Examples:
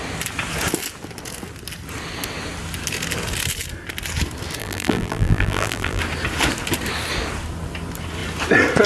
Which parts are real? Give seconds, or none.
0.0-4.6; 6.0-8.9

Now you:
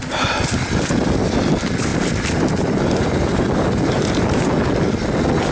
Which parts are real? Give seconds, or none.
0.0-5.5

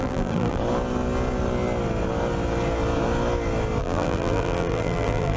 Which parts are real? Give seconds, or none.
0.6-3.8

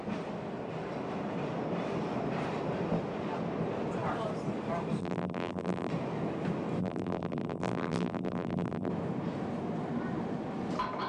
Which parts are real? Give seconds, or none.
0.0-5.0; 5.9-6.8; 8.9-11.1

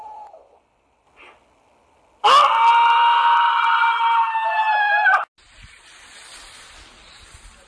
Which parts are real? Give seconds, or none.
0.0-7.7

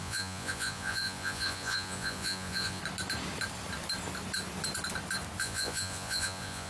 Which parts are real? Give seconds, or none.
2.8-5.4